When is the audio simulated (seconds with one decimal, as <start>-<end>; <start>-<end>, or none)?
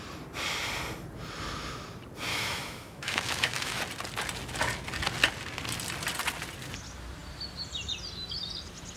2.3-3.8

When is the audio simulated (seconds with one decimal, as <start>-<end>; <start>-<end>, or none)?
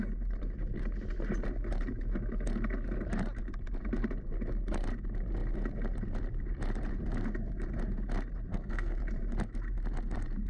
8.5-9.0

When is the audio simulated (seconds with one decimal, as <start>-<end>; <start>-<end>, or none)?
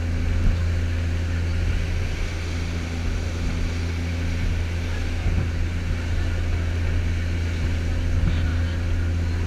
none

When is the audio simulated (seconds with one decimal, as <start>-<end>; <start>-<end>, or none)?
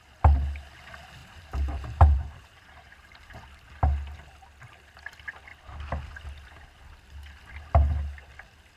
1.2-3.4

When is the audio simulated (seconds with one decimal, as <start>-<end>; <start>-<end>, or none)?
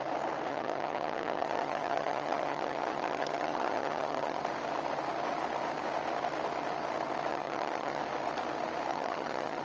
0.5-4.4; 7.3-8.0; 8.9-9.6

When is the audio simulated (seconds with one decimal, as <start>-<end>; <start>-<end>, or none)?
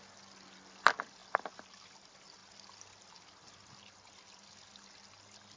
none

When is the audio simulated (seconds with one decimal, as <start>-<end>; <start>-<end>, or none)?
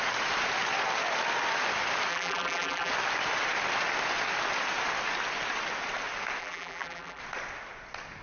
2.1-2.9; 6.4-7.2